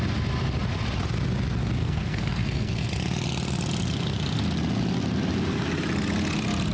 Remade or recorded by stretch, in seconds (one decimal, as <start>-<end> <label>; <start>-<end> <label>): 0.0-1.8 recorded; 1.8-2.9 remade; 2.9-6.7 recorded